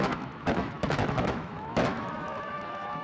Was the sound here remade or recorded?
remade